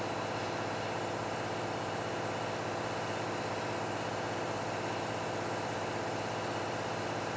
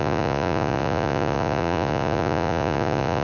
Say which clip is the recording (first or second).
first